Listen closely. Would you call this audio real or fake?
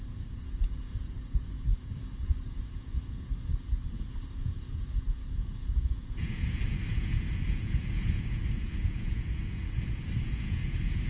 fake